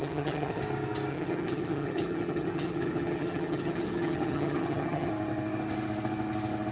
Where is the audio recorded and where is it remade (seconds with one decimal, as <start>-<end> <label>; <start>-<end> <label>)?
0.0-0.6 remade; 0.6-1.1 recorded; 1.1-5.1 remade; 5.1-6.7 recorded